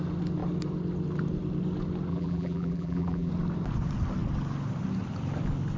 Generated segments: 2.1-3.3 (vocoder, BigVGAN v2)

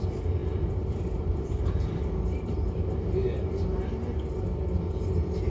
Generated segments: 0.4-2.3 (vocoder, BigVGAN v2)

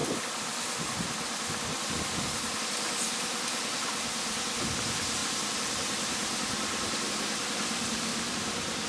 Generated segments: 5.2-7.1 (vocoder, BigVGAN v2); 8.1-8.9

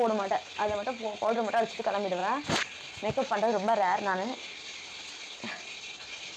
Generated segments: none

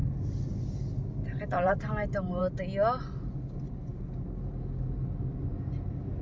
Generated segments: 1.5-2.4 (vocoder, BigVGAN v2)

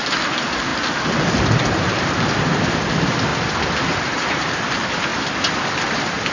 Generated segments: 0.0-0.7 (vocoder, BigVGAN v2); 1.8-3.3; 4.2-5.1

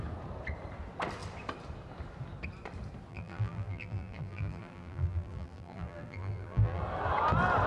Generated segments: 3.1-6.8 (vocoder, BigVGAN v2)